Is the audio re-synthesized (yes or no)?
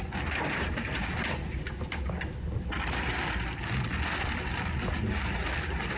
no